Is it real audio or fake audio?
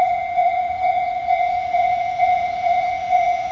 fake